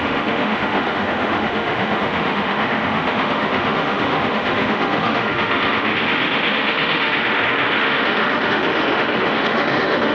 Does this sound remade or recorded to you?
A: remade